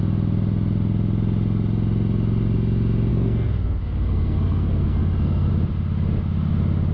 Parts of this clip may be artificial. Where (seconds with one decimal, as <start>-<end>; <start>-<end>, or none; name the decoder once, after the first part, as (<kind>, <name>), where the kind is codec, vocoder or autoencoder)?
3.1-5.5 (codec, SNAC)